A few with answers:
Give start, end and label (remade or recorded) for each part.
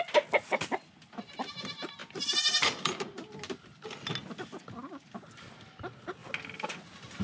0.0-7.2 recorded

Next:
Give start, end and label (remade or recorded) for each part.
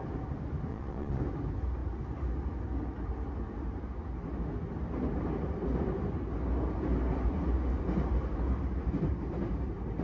0.0-0.7 recorded; 0.7-1.2 remade; 1.2-10.0 recorded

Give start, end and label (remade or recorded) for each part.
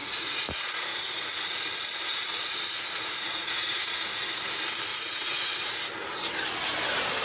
0.0-0.6 remade; 0.6-2.1 recorded; 2.1-4.2 remade; 4.2-4.9 recorded; 4.9-5.7 remade; 5.7-7.2 recorded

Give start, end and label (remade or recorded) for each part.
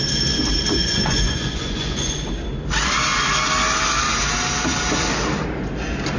0.0-0.8 recorded; 0.8-2.3 remade; 2.3-6.2 recorded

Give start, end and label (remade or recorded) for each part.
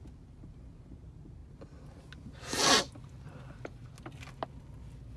0.0-5.2 recorded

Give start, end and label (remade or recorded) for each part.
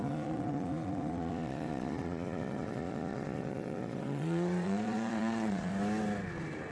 0.0-5.7 remade; 5.7-6.7 recorded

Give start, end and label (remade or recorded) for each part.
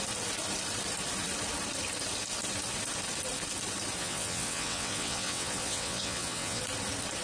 0.0-4.0 recorded; 4.0-6.6 remade; 6.6-7.2 recorded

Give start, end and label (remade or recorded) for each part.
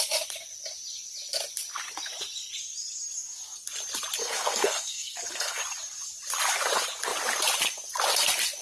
0.0-4.2 recorded; 4.2-5.6 remade; 5.6-8.6 recorded